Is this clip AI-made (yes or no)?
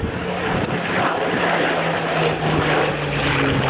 no